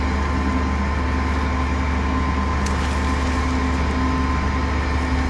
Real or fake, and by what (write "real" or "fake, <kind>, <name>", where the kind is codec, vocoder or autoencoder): real